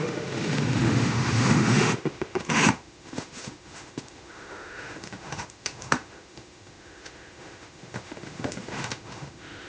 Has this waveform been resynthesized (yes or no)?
yes